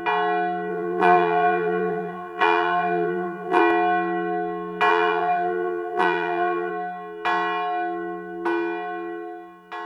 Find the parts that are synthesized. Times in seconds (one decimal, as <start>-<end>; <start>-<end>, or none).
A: 0.7-3.6; 4.9-6.7